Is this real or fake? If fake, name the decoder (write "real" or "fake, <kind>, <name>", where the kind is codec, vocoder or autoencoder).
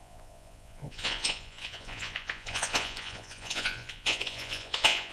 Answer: fake, vocoder, Vocos